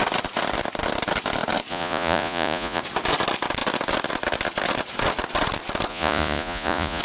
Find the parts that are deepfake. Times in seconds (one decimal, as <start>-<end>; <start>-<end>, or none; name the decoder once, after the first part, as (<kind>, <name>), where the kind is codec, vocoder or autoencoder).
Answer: 1.7-2.8 (vocoder, Vocos); 5.9-7.0